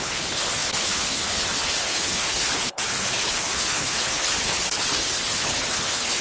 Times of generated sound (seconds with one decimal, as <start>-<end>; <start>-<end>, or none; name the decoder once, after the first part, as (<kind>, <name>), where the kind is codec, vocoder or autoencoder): 0.0-6.2 (codec, HILCodec)